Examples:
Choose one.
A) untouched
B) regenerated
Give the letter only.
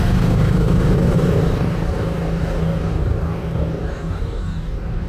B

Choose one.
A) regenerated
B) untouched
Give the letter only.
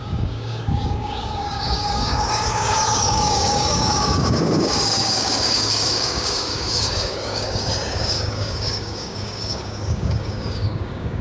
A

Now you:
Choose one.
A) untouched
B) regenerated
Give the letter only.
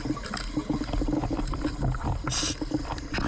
A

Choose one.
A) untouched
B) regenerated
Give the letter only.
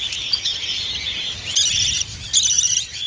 A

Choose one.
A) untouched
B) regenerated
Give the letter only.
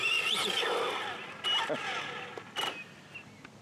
A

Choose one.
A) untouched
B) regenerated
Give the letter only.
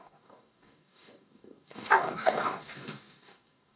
B